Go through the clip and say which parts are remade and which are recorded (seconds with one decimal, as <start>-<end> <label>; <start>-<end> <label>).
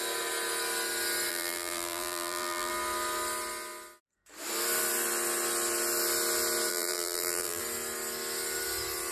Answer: 0.0-1.3 recorded; 1.3-2.7 remade; 2.7-6.7 recorded; 6.7-7.6 remade; 7.6-9.1 recorded